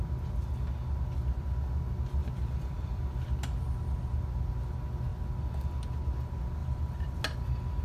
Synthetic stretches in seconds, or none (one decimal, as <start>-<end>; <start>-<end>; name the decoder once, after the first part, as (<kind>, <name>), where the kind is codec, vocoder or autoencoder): 2.2-3.0 (vocoder, BigVGAN v2); 6.6-7.2

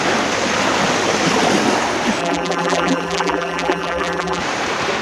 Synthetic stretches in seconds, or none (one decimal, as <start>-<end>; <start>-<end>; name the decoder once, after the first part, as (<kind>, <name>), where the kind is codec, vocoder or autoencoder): 2.2-4.4 (vocoder, BigVGAN v2)